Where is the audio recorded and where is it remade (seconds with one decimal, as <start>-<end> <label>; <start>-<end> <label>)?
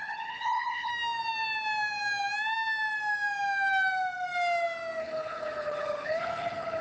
0.0-0.9 remade; 0.9-5.0 recorded; 5.0-6.8 remade